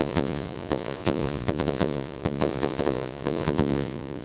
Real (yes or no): no